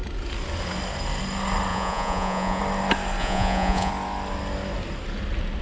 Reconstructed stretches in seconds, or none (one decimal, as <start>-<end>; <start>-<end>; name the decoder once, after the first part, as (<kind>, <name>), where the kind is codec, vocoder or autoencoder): 1.7-2.6 (vocoder, Vocos); 3.2-3.9